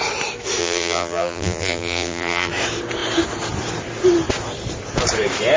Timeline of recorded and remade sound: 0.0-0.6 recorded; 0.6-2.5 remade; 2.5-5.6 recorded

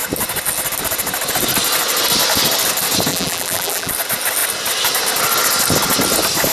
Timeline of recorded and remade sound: 0.0-3.1 recorded; 3.1-3.9 remade; 3.9-6.5 recorded

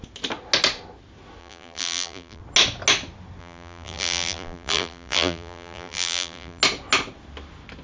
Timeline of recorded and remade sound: 0.0-1.4 recorded; 1.4-2.4 remade; 2.4-3.4 recorded; 3.4-6.6 remade; 6.6-7.8 recorded

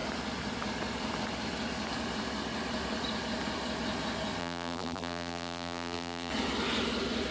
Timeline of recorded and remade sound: 0.0-4.4 recorded; 4.4-6.3 remade; 6.3-7.3 recorded

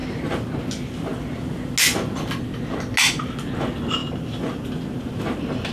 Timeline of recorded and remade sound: 0.0-5.7 recorded

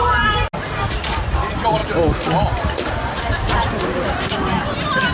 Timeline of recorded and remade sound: 0.0-0.9 recorded; 0.9-1.8 remade; 1.8-3.2 recorded; 3.2-5.1 remade